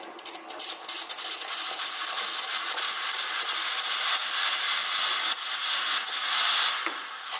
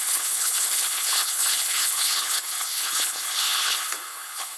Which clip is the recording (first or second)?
first